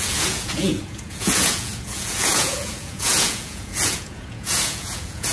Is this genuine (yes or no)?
no